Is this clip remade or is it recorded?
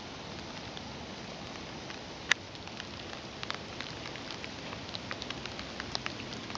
recorded